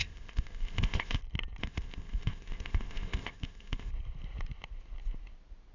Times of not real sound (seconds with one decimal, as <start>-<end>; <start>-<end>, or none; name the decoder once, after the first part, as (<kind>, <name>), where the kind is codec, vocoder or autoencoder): 0.0-1.2 (codec, ZipCodec); 1.6-3.9